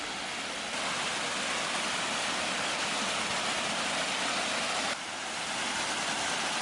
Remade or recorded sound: recorded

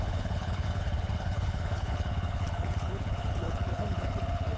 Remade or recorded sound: remade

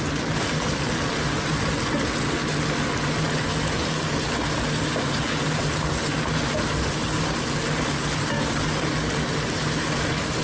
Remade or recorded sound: recorded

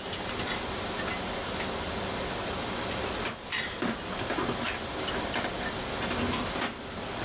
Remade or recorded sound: recorded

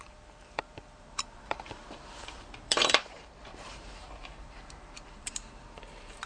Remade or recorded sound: remade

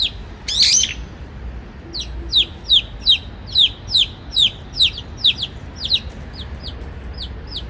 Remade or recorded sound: recorded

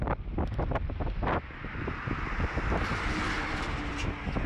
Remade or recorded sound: recorded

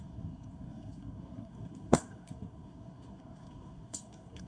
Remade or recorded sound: remade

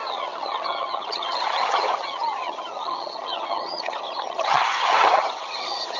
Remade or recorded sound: remade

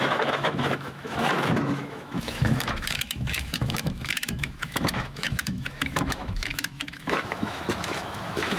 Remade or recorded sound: remade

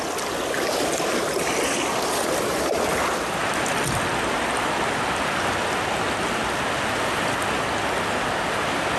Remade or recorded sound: recorded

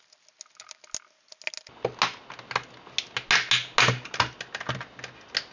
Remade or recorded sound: recorded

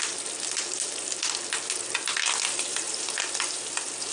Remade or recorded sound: remade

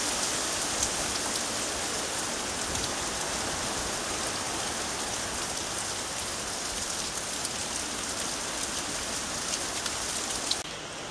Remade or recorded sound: recorded